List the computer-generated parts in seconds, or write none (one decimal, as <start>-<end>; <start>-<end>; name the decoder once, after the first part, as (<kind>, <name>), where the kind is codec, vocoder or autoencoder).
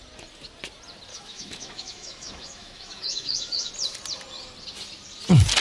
1.1-3.7 (autoencoder, DAC-VAE)